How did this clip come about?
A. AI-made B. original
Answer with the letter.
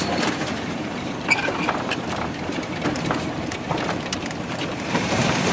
A